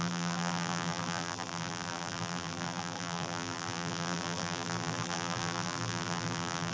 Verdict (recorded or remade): remade